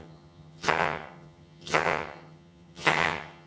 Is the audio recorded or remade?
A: remade